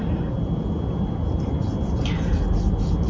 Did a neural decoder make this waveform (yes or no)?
no